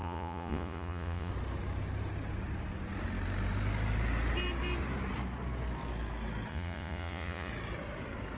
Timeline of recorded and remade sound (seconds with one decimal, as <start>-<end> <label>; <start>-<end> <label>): 0.0-1.3 remade; 1.3-6.5 recorded; 6.5-7.5 remade; 7.5-8.4 recorded